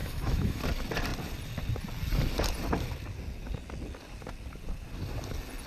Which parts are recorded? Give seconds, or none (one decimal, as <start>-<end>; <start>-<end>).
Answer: 0.6-5.7